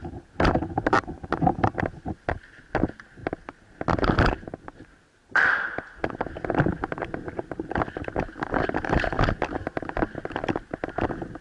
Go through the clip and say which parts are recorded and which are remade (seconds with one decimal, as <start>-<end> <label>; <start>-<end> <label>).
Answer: 0.0-11.4 recorded